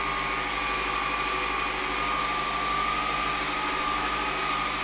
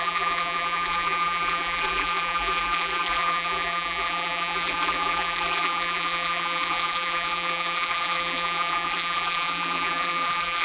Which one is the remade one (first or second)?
second